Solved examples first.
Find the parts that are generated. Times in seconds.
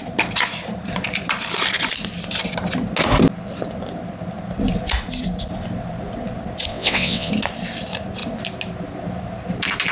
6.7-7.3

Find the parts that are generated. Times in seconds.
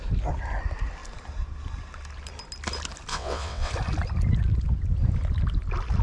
3.1-3.7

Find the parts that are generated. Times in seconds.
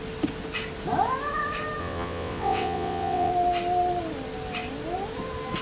1.8-3.3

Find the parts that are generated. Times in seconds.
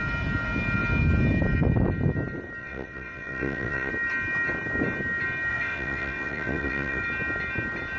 2.6-3.9; 5.5-7.0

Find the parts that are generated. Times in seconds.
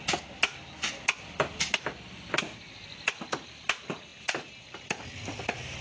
none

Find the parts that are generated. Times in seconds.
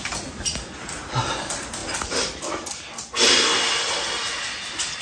none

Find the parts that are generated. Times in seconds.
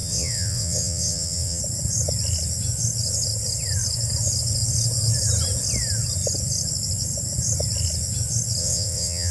0.0-1.6; 8.6-9.3